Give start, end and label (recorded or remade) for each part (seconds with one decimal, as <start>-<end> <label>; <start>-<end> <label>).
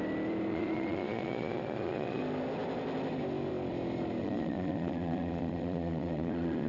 0.0-0.5 recorded; 0.5-2.2 remade; 2.2-4.2 recorded; 4.2-6.7 remade